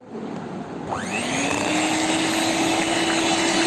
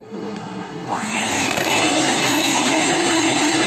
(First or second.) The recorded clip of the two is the first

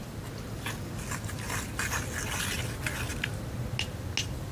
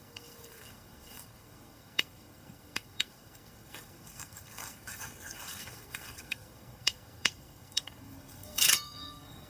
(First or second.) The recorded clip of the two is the first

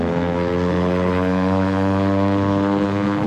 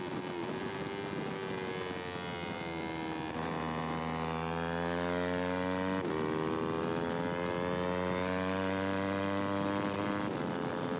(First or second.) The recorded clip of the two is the second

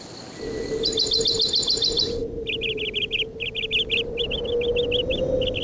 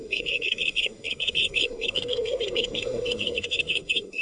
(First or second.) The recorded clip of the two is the first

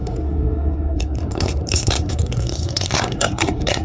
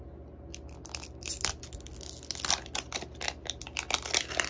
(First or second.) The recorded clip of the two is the second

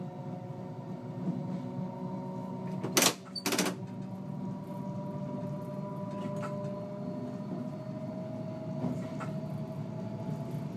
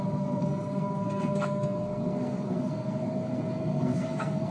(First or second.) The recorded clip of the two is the first